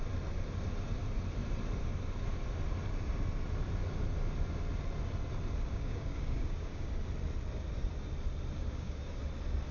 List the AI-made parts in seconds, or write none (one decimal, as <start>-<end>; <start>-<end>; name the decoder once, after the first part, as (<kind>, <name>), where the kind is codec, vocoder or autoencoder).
5.7-6.9 (codec, DAC); 8.6-9.2